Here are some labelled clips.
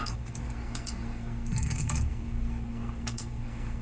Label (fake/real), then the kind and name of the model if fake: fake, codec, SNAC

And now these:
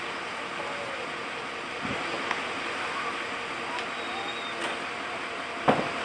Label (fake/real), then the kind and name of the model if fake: real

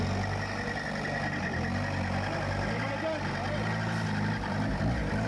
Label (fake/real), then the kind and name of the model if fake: real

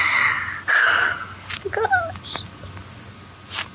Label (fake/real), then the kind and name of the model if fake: real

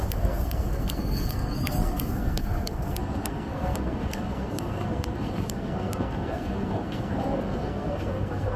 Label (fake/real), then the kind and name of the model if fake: fake, codec, SNAC